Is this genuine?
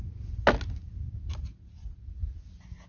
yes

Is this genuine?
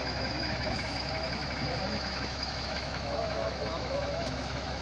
no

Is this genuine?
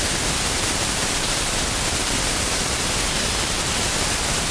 yes